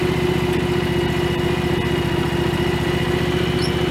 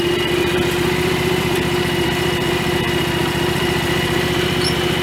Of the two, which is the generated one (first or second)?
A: second